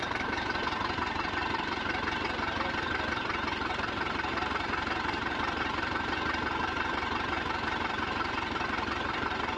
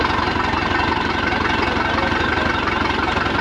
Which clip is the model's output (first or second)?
first